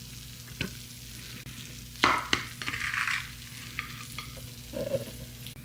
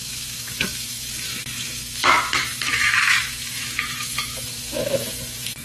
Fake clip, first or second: second